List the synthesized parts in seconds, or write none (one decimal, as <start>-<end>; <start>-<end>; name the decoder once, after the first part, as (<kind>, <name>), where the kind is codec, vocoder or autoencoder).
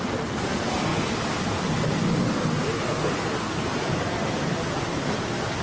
none